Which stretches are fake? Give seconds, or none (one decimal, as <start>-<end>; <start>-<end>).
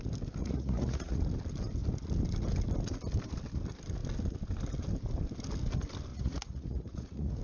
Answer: 0.4-1.2; 6.1-7.4